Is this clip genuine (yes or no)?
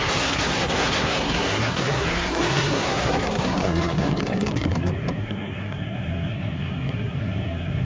no